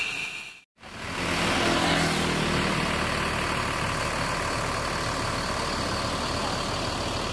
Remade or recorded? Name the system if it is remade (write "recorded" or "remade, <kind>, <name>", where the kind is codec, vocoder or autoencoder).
recorded